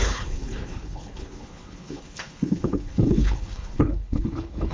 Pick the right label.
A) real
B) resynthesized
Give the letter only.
B